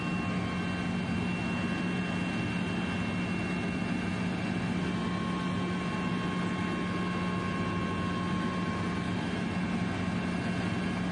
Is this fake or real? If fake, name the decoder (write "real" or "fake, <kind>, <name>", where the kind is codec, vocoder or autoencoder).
real